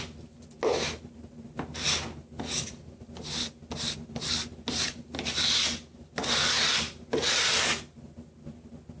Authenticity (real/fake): real